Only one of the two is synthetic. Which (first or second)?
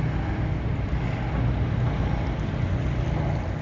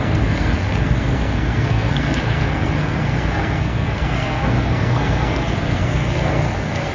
second